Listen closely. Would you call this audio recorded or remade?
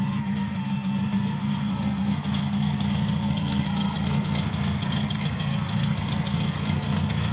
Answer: remade